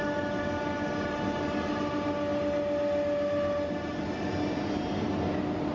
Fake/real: real